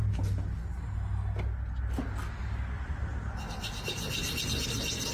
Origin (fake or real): real